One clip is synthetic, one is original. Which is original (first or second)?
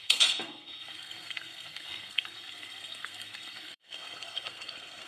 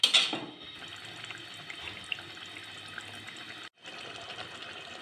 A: second